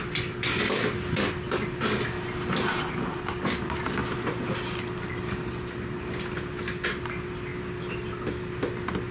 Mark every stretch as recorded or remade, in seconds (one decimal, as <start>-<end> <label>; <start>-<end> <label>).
0.0-9.1 recorded